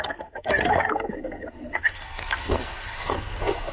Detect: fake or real fake